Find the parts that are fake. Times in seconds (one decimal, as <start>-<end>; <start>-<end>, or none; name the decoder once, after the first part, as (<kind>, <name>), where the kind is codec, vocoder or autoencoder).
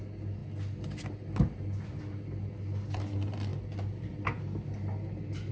none